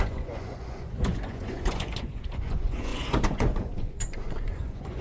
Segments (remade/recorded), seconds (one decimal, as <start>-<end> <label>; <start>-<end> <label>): 0.0-5.0 remade